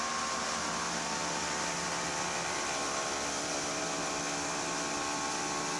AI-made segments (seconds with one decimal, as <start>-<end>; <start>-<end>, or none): 1.2-3.8